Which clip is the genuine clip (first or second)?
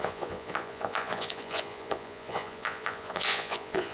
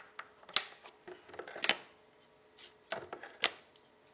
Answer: second